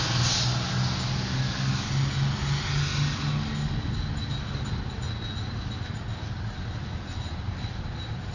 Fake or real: real